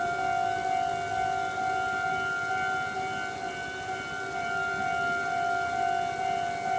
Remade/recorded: recorded